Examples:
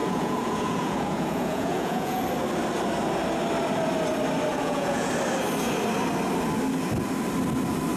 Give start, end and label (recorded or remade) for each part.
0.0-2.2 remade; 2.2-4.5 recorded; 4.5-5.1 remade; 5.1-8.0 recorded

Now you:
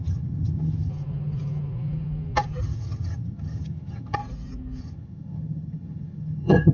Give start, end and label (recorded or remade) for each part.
0.0-0.9 remade; 0.9-2.6 recorded; 2.6-4.2 remade; 4.2-4.8 recorded; 4.8-6.7 remade

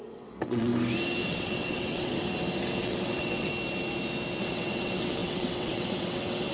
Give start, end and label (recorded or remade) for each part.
0.0-0.7 remade; 0.7-1.3 recorded; 1.3-2.1 remade; 2.1-2.8 recorded; 2.8-3.5 remade; 3.5-4.4 recorded; 4.4-6.5 remade